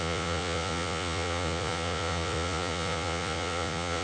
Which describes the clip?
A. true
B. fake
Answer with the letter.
B